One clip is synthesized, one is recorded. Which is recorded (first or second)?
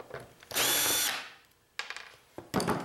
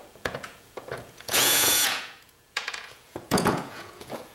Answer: first